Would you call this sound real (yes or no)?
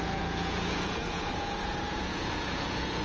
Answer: no